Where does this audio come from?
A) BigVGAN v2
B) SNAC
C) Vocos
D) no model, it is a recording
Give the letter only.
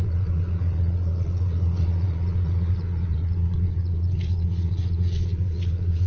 C